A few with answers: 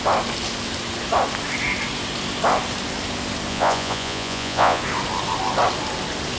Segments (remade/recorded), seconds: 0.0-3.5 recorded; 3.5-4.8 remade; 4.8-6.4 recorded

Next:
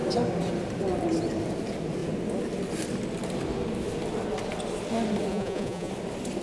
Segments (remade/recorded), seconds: 0.0-5.3 recorded; 5.3-5.9 remade; 5.9-6.4 recorded

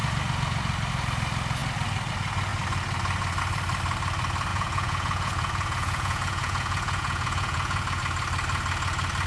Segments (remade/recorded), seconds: 0.0-4.5 recorded; 4.5-8.0 remade; 8.0-9.3 recorded

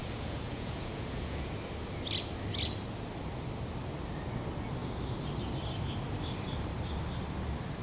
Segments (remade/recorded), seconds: 0.0-1.5 remade; 1.5-7.8 recorded

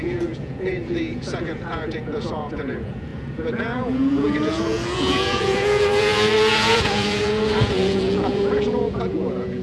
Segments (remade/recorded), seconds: 0.0-9.6 remade

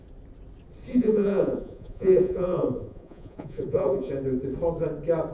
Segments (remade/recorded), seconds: 0.0-0.9 recorded; 0.9-4.1 remade; 4.1-5.3 recorded

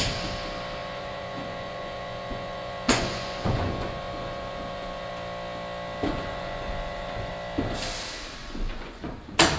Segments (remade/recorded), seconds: 0.0-0.8 recorded; 0.8-5.1 remade; 5.1-6.1 recorded; 6.1-7.3 remade; 7.3-8.4 recorded; 8.4-9.1 remade; 9.1-9.6 recorded